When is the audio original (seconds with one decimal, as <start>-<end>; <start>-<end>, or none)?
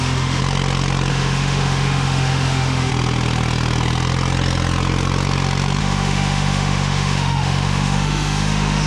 0.4-1.1; 2.9-5.8